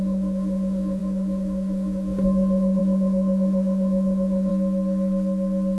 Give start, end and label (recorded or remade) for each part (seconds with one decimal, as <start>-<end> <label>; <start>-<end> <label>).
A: 0.0-4.5 remade; 4.5-5.8 recorded